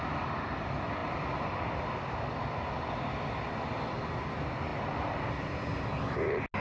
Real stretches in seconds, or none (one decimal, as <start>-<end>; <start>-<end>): 0.0-6.6